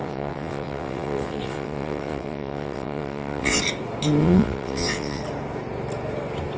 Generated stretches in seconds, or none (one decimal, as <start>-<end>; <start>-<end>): 0.0-3.6; 4.2-5.2